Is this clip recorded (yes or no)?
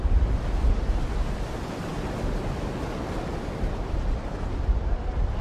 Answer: yes